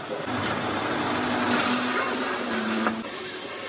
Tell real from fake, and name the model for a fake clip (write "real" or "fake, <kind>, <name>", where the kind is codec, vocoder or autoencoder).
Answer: real